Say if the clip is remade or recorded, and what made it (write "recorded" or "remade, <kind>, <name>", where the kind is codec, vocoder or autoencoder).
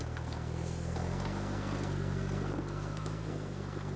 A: remade, codec, SNAC